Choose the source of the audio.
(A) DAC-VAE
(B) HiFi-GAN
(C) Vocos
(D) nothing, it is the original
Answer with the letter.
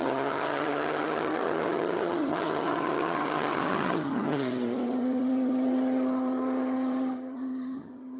B